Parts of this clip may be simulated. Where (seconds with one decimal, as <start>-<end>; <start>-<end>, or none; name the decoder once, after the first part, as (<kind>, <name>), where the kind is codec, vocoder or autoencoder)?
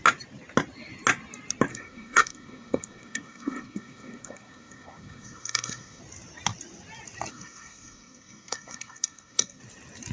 1.7-6.0 (codec, SNAC); 7.3-9.6